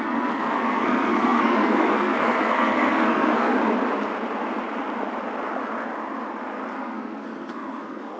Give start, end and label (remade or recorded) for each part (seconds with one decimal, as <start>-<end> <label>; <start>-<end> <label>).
0.0-3.5 remade; 3.5-6.7 recorded; 6.7-8.2 remade